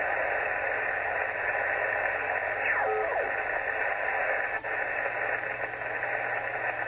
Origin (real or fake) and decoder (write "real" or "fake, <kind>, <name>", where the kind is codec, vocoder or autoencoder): real